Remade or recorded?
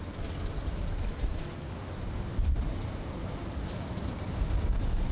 recorded